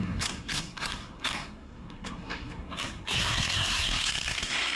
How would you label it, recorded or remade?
remade